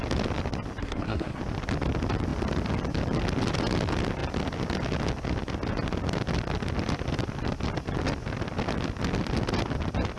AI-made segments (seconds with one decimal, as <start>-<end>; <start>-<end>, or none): 0.8-1.4